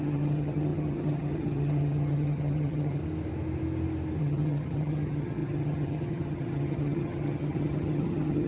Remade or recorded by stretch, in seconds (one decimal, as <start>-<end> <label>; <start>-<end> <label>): 0.0-3.0 remade; 3.0-4.2 recorded; 4.2-8.5 remade